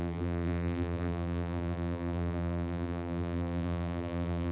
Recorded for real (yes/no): no